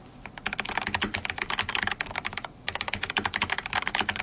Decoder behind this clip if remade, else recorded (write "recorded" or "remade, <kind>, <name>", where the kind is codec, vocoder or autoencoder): recorded